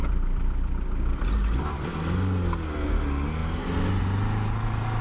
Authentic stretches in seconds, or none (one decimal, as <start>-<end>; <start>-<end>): 1.9-3.4; 4.0-5.0